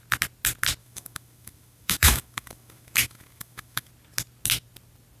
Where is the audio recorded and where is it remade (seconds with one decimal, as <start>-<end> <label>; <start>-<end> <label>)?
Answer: 0.0-0.8 recorded; 0.8-3.9 remade; 3.9-5.2 recorded